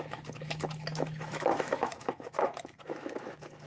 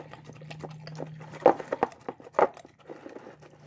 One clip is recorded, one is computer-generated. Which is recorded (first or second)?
second